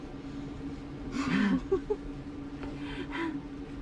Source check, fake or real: real